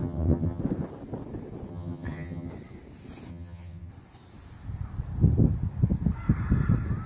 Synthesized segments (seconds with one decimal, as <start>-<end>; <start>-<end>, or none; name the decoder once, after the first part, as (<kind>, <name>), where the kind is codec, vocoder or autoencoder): 0.0-0.6 (vocoder, HiFi-GAN); 1.7-2.5; 3.3-3.9